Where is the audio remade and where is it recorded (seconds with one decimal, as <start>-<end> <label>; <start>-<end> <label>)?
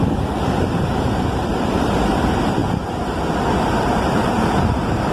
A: 0.0-2.6 remade; 2.6-3.6 recorded; 3.6-5.1 remade